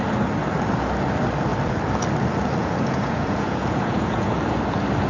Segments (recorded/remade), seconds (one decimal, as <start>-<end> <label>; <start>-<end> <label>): 0.0-2.6 recorded; 2.6-4.3 remade; 4.3-5.1 recorded